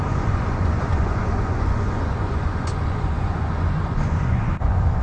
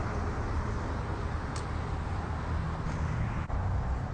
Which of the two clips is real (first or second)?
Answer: second